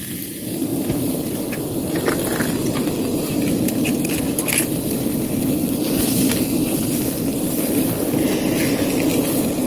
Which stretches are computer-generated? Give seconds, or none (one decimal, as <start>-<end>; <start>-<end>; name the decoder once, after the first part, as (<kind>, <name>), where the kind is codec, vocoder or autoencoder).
none